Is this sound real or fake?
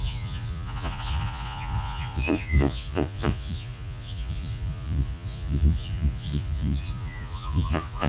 fake